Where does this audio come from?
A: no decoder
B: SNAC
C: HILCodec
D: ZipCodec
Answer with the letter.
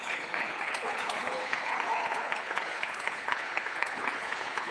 C